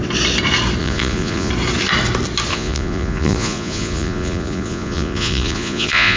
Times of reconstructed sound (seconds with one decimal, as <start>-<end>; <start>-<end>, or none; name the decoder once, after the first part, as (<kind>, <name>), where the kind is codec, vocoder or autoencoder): 0.8-1.5 (vocoder, Vocos); 2.5-6.2